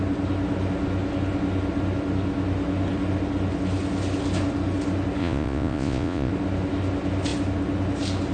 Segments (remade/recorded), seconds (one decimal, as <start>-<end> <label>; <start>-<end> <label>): 0.0-5.2 recorded; 5.2-6.3 remade; 6.3-8.3 recorded